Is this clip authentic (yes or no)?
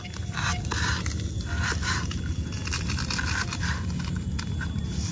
yes